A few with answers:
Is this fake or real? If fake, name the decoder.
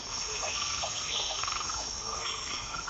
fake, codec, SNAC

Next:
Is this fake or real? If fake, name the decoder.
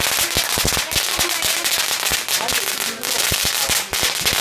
real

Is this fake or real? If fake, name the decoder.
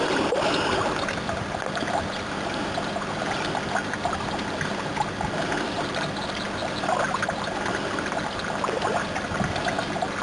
real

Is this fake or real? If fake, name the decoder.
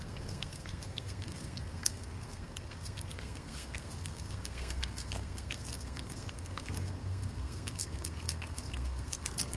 fake, codec, SNAC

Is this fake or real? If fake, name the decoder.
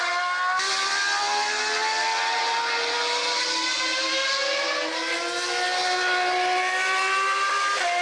real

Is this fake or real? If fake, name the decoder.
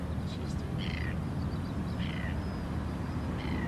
real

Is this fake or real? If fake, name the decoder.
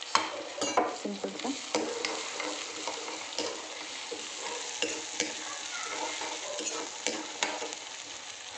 real